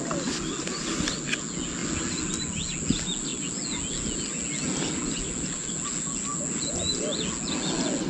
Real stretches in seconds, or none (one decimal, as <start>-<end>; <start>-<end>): 0.0-8.1